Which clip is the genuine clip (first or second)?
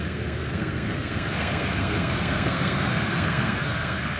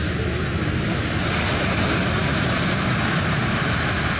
second